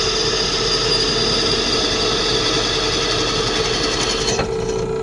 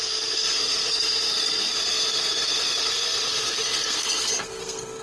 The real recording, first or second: first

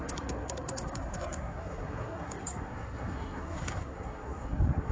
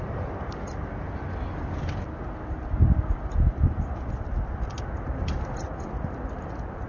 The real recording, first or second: second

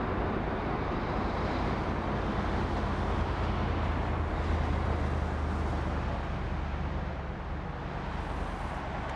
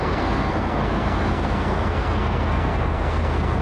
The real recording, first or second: first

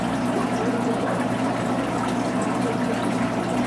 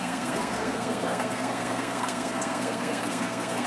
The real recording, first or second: first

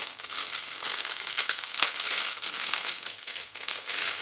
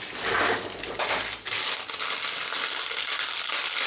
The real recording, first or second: second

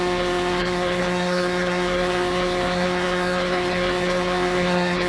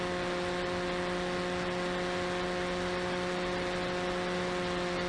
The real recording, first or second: second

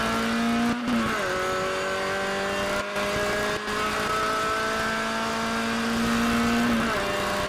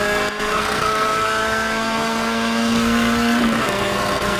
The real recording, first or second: first